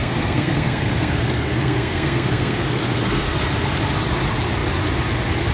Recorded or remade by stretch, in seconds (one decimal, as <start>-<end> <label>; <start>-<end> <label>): 0.0-3.3 remade; 3.3-5.5 recorded